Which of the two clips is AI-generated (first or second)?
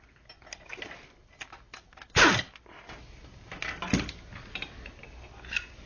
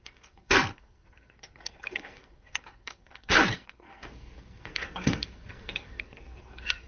second